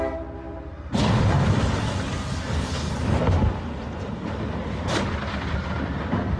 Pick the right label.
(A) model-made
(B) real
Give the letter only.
B